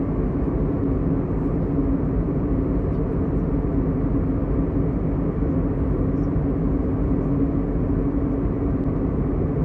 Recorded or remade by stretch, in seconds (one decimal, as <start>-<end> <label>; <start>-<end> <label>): 0.0-9.6 recorded